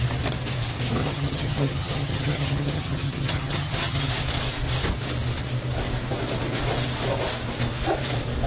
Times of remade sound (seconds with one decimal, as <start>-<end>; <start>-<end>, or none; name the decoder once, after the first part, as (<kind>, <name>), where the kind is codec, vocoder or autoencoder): 1.0-4.1 (vocoder, HiFi-GAN)